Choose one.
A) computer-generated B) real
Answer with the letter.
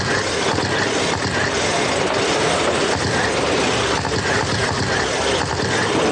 B